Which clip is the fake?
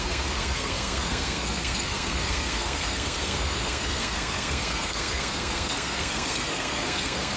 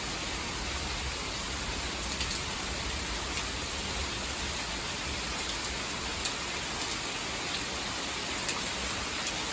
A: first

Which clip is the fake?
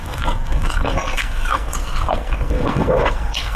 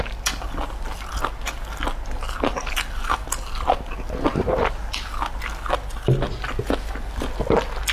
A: first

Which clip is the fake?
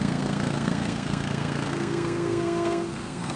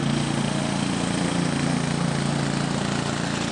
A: first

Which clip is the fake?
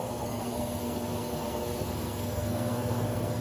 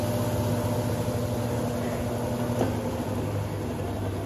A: first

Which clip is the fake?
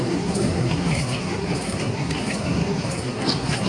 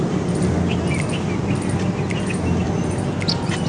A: first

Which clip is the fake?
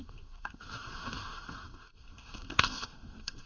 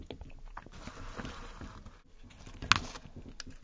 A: first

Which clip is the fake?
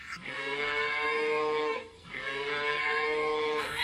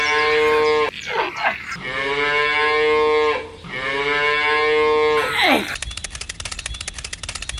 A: first